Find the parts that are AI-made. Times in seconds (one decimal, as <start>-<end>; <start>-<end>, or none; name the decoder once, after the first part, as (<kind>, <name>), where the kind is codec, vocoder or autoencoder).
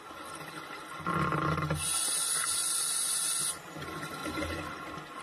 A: none